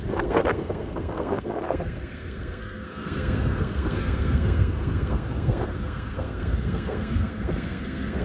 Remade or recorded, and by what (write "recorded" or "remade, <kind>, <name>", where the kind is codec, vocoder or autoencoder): remade, codec, SNAC